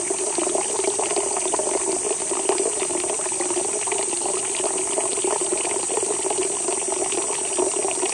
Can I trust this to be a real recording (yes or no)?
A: yes